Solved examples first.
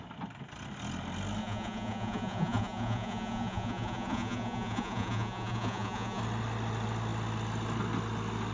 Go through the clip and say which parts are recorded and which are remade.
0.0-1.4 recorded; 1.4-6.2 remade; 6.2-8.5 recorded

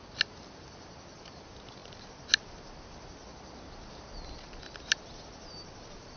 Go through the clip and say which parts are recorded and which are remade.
0.0-6.2 recorded

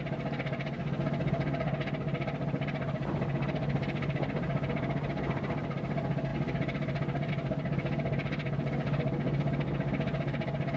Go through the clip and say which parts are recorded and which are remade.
0.0-10.8 recorded

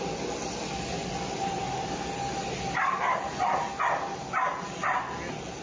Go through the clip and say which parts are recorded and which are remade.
0.0-5.6 recorded

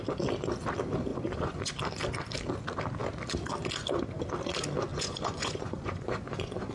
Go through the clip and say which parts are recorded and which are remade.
0.0-1.1 recorded; 1.1-1.7 remade; 1.7-4.9 recorded; 4.9-6.7 remade

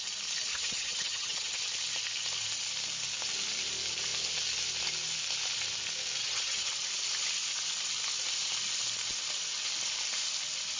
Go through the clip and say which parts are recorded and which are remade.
0.0-0.5 recorded; 0.5-1.6 remade; 1.6-6.2 recorded; 6.2-6.7 remade; 6.7-10.8 recorded